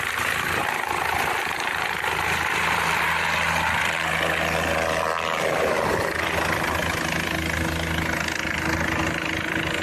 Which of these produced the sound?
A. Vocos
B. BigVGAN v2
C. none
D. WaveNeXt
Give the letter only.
C